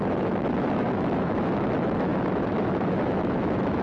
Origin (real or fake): fake